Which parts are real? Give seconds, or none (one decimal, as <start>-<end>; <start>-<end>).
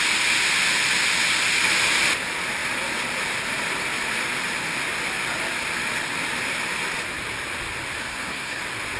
0.0-8.0; 8.6-9.0